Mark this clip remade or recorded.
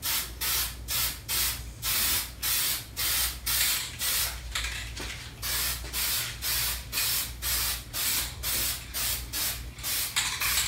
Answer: recorded